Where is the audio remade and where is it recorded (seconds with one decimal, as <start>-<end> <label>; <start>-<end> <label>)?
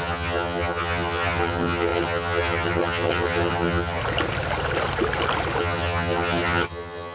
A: 0.0-4.0 remade; 4.0-5.6 recorded; 5.6-7.1 remade